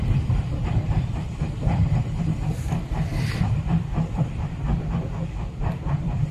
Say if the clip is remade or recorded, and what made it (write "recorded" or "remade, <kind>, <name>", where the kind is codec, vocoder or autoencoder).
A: remade, vocoder, BigVGAN v2